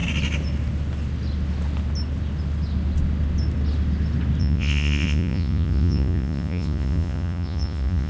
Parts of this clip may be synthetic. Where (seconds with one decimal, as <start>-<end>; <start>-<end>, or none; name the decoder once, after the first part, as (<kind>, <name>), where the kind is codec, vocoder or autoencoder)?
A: 4.4-8.1 (vocoder, Vocos)